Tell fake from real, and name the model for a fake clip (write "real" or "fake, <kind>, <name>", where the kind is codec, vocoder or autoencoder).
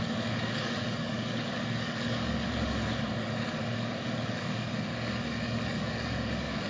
fake, codec, DAC